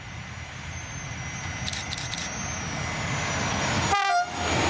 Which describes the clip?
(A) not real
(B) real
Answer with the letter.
B